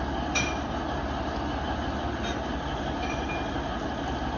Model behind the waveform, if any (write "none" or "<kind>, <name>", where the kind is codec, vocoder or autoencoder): none